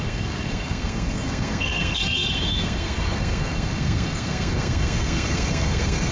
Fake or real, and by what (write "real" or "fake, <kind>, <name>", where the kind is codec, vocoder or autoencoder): fake, codec, SNAC